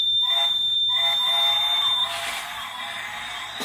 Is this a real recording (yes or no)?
no